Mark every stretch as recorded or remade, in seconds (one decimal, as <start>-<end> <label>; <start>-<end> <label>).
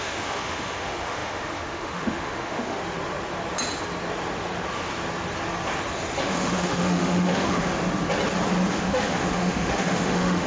0.0-2.8 remade; 2.8-6.2 recorded; 6.2-7.7 remade; 7.7-8.7 recorded; 8.7-10.5 remade